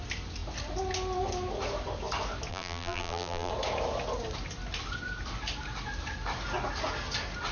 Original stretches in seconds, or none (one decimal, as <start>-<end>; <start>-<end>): 0.0-2.5; 3.5-7.5